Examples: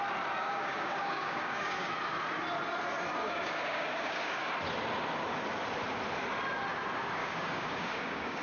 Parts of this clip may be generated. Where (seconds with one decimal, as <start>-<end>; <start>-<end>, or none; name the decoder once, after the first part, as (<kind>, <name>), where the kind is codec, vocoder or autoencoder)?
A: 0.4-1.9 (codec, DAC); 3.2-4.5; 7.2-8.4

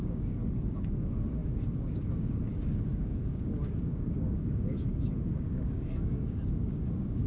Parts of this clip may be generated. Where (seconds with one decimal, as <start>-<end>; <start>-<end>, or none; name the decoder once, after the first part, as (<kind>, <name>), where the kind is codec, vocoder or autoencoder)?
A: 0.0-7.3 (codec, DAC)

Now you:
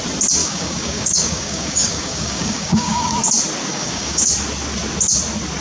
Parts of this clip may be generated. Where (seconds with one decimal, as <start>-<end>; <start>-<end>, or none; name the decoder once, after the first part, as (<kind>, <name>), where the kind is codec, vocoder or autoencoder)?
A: 0.4-3.1 (codec, DAC); 3.7-4.3

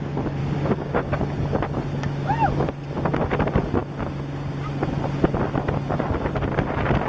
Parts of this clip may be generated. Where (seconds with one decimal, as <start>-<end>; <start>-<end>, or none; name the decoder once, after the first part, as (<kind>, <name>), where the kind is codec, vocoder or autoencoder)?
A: 0.4-1.2 (codec, DAC)

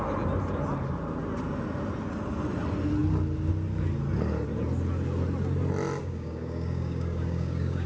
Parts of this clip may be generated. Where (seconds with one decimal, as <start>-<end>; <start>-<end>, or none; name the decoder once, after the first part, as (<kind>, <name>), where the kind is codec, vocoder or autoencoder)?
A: 6.0-7.9 (codec, DAC)

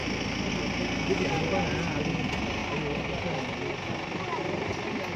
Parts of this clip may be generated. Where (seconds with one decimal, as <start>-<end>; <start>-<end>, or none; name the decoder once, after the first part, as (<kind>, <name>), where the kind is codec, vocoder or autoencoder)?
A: none